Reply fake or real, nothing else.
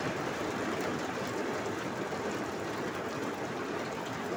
real